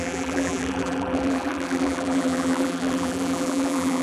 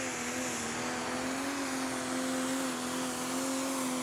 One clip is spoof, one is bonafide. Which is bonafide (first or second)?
second